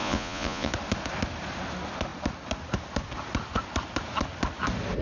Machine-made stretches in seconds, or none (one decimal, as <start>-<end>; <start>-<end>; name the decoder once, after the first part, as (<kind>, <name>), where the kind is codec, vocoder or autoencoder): 0.0-0.7 (vocoder, Vocos)